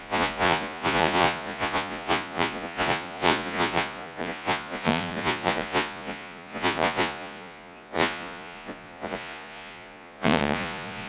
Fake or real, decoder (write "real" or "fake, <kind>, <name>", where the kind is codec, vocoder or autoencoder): fake, vocoder, Vocos